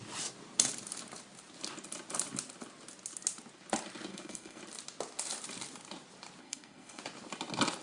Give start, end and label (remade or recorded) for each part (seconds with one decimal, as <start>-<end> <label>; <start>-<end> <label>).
0.0-4.1 recorded; 4.1-4.6 remade; 4.6-6.4 recorded; 6.4-7.0 remade; 7.0-7.8 recorded